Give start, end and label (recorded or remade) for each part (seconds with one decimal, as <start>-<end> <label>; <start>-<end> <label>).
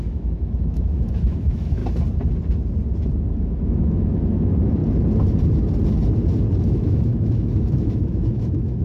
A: 0.0-1.8 remade; 1.8-3.4 recorded; 3.4-4.8 remade; 4.8-6.6 recorded; 6.6-8.8 remade